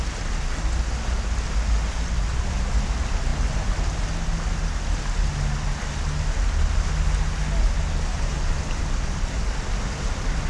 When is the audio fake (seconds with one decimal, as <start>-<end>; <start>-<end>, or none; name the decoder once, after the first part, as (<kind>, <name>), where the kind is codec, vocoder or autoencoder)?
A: 8.1-8.8 (vocoder, BigVGAN v2)